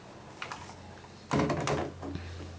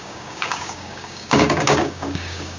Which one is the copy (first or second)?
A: second